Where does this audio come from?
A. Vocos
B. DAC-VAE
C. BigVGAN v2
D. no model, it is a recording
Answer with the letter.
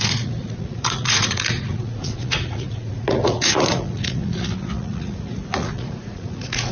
A